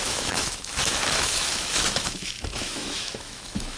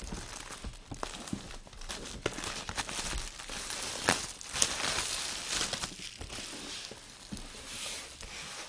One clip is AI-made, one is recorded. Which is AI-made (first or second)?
first